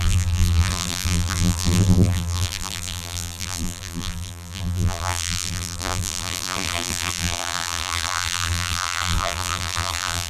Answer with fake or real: fake